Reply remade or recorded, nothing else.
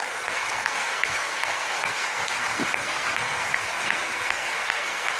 remade